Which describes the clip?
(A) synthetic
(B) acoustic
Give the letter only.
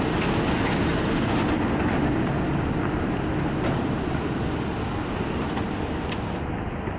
B